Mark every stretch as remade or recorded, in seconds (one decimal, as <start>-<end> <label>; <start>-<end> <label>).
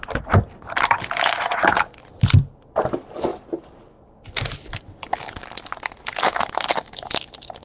0.0-7.6 recorded